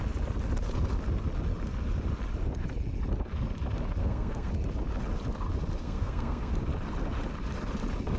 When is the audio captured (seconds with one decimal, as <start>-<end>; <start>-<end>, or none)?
0.0-4.0; 4.5-5.8; 6.5-8.2